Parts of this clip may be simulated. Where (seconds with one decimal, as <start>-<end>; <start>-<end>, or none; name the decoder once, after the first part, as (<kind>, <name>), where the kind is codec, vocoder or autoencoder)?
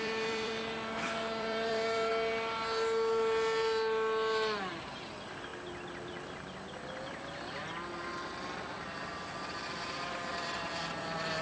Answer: 0.0-2.1 (vocoder, BigVGAN v2); 4.7-11.4